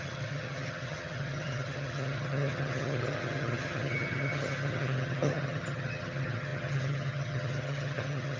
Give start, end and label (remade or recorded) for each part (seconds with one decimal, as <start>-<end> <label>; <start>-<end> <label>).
0.0-8.4 remade